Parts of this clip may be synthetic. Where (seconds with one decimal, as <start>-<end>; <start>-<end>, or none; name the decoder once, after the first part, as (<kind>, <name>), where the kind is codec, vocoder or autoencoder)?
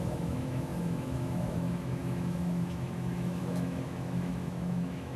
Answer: 0.0-5.2 (autoencoder, DAC-VAE)